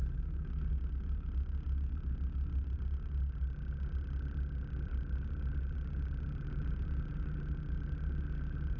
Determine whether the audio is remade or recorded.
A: recorded